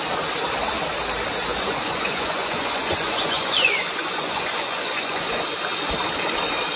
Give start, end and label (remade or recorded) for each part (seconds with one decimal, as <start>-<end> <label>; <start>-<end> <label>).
0.0-1.5 recorded; 1.5-5.4 remade; 5.4-6.8 recorded